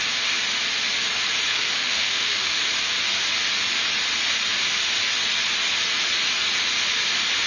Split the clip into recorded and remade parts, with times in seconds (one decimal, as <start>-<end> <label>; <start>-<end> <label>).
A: 0.0-1.5 recorded; 1.5-2.6 remade; 2.6-7.5 recorded